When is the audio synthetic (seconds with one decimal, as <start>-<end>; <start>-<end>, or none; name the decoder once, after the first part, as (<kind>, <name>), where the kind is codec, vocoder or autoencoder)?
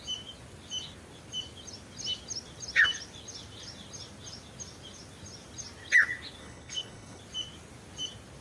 6.4-7.2 (codec, HILCodec)